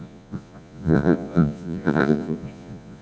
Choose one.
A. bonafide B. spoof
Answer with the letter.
B